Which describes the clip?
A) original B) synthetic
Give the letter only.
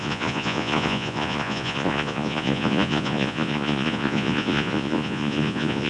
B